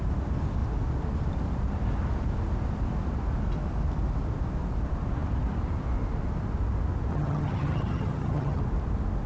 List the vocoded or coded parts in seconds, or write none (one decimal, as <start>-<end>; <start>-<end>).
7.1-8.6